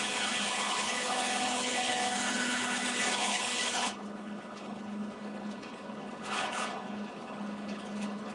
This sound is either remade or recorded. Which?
remade